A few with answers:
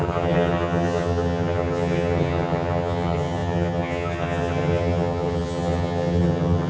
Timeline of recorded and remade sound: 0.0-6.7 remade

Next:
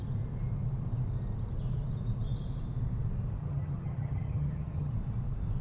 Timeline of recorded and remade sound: 0.0-3.4 recorded; 3.4-4.9 remade; 4.9-5.6 recorded